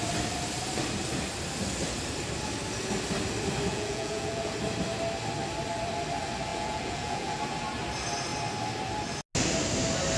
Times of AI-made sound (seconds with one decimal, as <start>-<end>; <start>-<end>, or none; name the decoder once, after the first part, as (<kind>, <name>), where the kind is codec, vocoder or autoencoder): 3.7-4.5 (vocoder, Vocos); 6.5-7.4